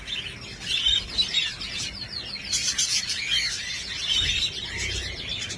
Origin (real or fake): real